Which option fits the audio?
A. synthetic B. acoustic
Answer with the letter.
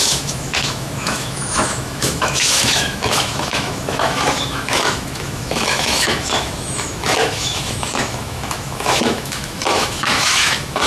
A